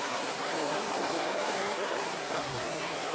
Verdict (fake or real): fake